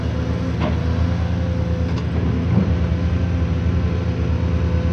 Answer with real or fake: real